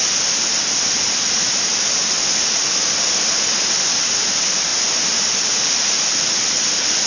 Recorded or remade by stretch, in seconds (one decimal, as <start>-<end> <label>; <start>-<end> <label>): 0.0-4.7 recorded; 4.7-6.6 remade; 6.6-7.1 recorded